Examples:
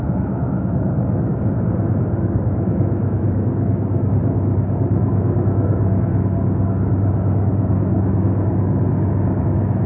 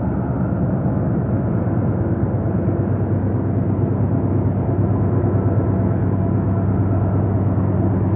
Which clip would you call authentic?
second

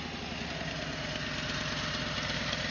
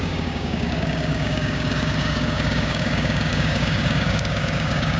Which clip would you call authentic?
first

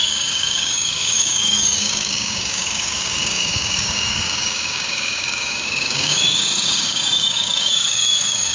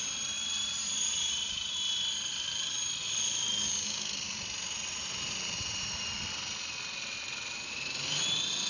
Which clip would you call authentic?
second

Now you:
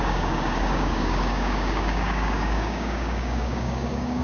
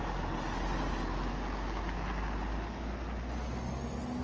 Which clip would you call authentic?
second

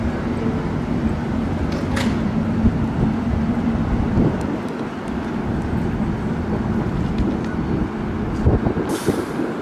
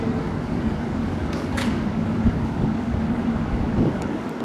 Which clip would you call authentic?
first